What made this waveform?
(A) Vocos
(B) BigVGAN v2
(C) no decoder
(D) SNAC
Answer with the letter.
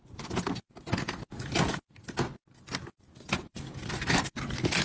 C